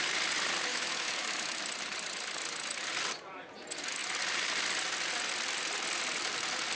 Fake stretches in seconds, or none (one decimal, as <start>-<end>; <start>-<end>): 0.7-1.6